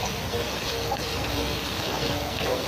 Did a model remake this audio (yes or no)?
yes